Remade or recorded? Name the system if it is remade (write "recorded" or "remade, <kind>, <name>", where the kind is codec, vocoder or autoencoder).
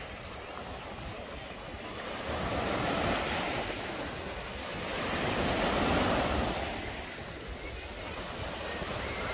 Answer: recorded